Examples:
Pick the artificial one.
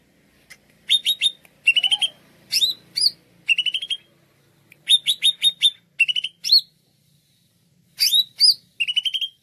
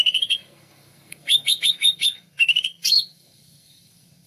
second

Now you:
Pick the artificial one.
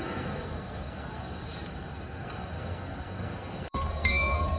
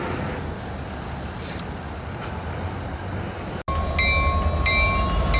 first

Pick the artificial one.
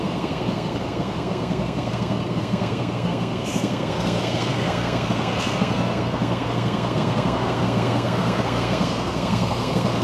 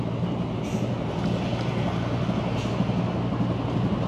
first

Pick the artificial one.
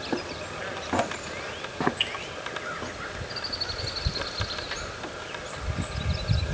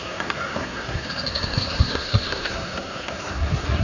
second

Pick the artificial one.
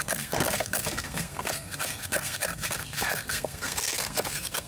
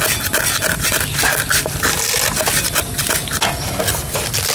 first